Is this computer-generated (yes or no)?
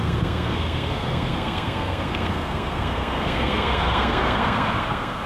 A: yes